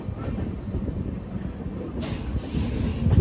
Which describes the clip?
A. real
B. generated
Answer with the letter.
A